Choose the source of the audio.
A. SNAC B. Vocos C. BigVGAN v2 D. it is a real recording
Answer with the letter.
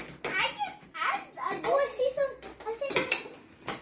D